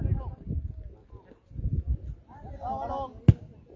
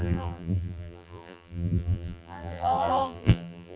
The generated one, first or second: second